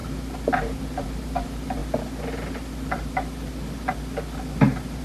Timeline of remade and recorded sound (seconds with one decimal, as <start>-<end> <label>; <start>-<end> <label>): 0.0-5.0 recorded